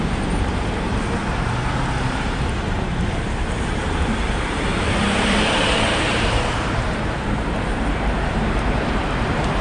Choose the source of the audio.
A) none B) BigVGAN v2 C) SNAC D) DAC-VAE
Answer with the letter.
B